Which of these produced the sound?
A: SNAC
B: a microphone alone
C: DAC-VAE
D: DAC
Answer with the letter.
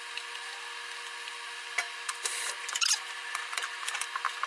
B